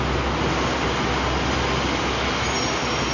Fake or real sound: real